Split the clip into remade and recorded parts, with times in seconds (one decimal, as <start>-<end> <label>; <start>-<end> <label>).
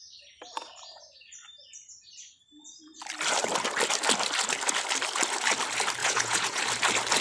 0.0-6.0 recorded; 6.0-6.6 remade; 6.6-7.2 recorded